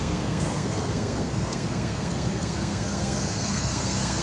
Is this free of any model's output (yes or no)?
no